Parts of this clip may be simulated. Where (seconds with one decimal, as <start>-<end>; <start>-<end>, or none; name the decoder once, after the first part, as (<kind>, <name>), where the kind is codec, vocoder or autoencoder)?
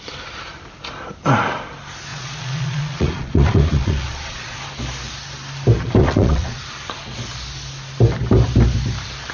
2.1-4.6 (vocoder, Vocos); 6.0-6.6